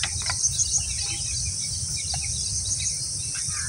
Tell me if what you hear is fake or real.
real